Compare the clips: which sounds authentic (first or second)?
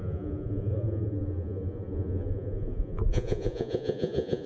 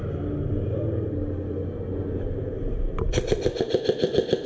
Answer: second